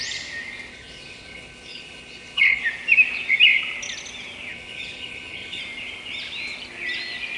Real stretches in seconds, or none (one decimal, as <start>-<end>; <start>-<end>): 0.0-0.7; 2.6-4.5; 5.6-7.4